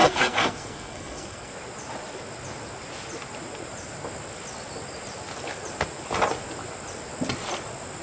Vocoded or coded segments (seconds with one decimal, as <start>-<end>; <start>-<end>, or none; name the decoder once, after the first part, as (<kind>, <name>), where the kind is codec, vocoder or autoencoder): 0.0-1.5 (codec, SNAC)